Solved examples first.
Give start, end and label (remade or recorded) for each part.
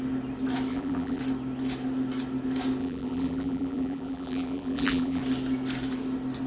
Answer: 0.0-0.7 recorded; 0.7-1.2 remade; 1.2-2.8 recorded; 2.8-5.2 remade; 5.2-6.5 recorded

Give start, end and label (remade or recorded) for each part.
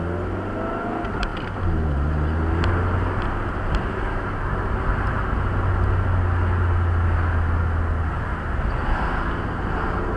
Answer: 0.0-10.2 recorded